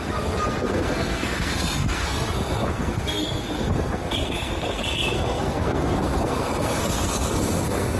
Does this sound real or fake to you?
fake